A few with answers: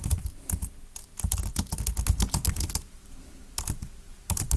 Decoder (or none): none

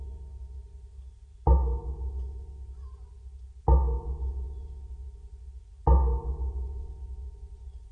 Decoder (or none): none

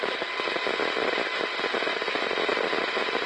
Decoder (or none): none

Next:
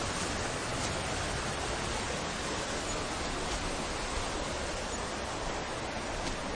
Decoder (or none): none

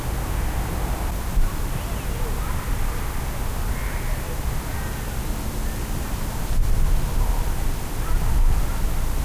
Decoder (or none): none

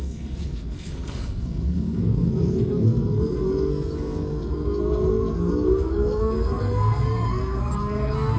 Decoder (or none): codec, SNAC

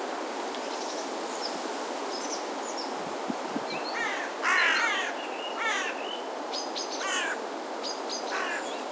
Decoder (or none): none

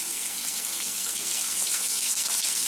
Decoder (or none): codec, SNAC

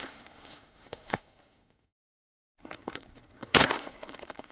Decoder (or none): codec, SNAC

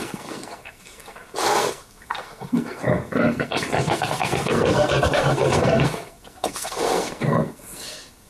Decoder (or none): codec, SNAC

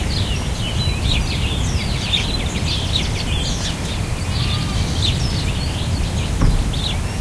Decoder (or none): none